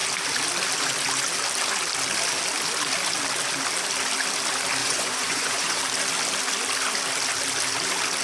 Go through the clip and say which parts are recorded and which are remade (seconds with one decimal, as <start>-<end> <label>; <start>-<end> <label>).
0.0-4.8 recorded; 4.8-5.8 remade; 5.8-8.2 recorded